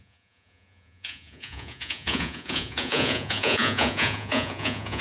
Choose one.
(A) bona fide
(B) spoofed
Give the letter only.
B